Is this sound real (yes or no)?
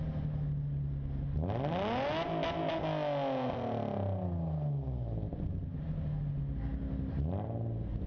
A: yes